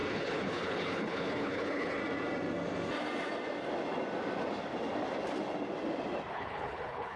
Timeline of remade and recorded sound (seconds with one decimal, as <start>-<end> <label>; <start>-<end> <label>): 0.0-2.0 remade; 2.0-6.3 recorded; 6.3-7.2 remade